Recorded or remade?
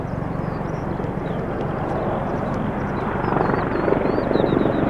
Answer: recorded